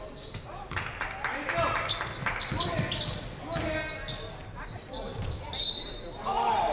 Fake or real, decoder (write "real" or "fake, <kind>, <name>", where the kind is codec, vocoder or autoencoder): real